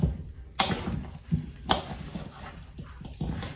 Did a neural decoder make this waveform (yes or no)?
no